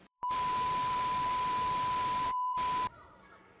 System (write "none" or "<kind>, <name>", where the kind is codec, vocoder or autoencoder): vocoder, BigVGAN v2